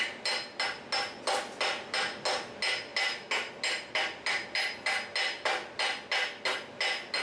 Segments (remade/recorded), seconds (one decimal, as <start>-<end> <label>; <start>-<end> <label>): 0.0-7.2 recorded